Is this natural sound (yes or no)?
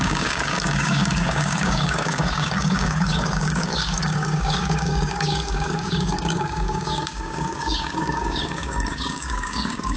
no